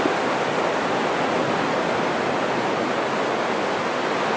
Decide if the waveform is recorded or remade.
recorded